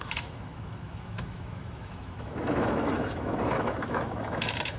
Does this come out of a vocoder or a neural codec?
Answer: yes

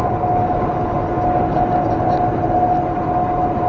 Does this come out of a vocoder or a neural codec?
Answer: no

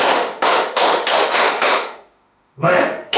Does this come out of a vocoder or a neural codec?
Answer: yes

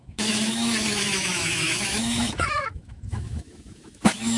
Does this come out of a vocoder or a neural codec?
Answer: yes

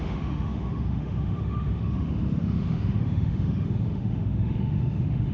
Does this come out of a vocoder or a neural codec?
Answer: yes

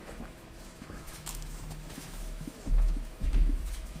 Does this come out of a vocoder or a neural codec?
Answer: yes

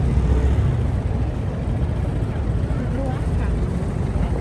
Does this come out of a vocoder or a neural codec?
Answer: no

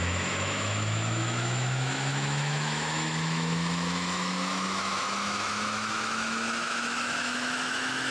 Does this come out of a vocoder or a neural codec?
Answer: yes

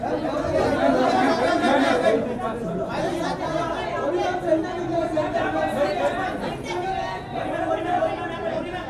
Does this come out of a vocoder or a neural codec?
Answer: no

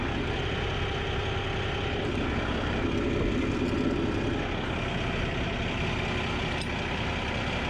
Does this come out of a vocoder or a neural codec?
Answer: no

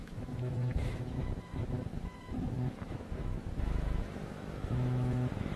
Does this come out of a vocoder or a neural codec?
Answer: yes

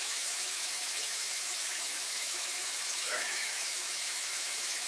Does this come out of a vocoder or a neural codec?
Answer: yes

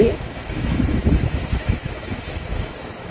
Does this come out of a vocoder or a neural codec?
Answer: yes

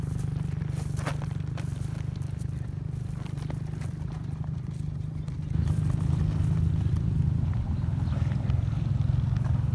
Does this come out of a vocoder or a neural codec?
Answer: no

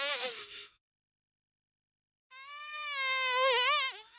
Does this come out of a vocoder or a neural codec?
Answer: yes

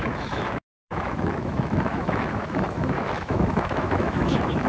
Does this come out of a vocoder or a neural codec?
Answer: yes